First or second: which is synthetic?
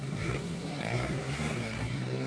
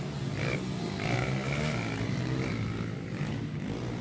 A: first